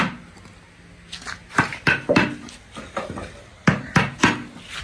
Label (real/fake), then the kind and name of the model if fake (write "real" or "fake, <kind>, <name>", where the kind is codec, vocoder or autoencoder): real